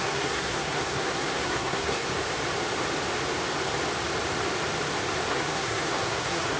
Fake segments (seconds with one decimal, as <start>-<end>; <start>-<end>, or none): 0.0-2.1; 5.3-6.6